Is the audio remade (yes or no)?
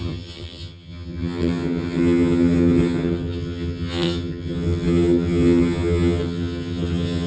yes